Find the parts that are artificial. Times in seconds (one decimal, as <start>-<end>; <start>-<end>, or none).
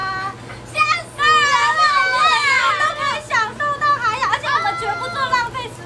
1.6-2.7